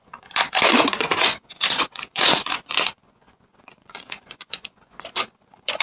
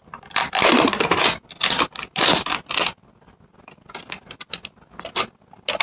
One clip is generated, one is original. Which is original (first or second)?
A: second